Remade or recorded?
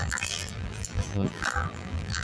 remade